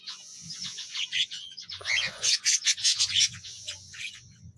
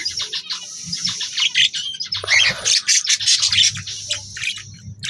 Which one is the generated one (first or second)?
first